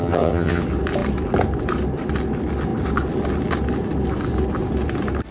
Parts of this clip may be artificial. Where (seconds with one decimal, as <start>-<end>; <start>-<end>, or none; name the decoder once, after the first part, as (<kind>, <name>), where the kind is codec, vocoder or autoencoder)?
0.0-0.6 (vocoder, HiFi-GAN)